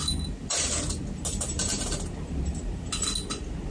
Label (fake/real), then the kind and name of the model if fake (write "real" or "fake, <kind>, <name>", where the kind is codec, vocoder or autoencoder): real